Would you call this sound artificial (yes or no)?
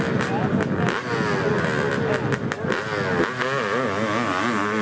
no